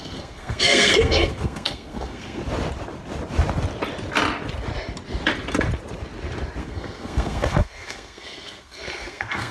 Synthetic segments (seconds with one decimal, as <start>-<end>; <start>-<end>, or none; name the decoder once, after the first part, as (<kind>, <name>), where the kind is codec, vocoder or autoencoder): 0.0-2.4 (codec, SNAC); 6.6-9.5